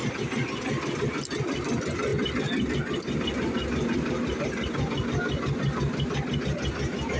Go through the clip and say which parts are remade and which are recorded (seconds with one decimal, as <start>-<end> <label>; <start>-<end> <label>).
0.0-7.2 recorded